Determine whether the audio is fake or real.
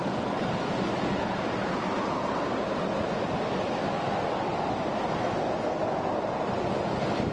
real